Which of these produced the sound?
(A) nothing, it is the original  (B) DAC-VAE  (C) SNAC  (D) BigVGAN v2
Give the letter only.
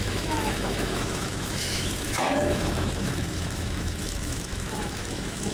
B